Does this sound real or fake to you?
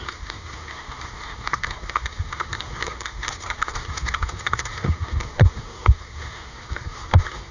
fake